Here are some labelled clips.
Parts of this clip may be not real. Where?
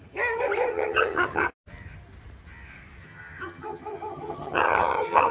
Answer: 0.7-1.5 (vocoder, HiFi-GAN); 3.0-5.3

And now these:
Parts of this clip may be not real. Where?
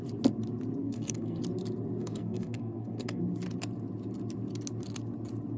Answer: 0.8-1.4 (codec, SNAC); 2.0-3.2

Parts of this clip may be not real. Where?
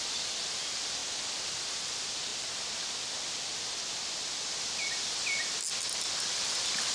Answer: 0.0-1.0 (vocoder, BigVGAN v2); 1.6-2.3; 6.4-6.9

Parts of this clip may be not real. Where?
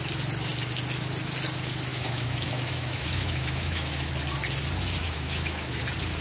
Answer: 1.9-4.1 (autoencoder, DAC-VAE); 5.0-5.8